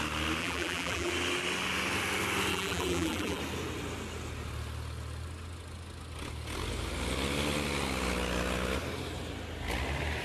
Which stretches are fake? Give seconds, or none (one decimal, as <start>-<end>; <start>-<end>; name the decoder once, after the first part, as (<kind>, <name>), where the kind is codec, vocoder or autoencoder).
0.4-1.1 (vocoder, BigVGAN v2); 2.5-3.4